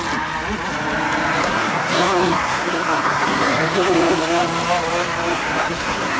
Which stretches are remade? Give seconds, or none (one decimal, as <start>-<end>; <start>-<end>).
1.4-4.4; 5.3-6.2